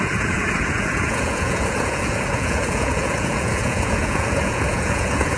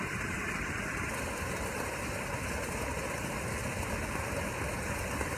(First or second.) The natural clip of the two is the second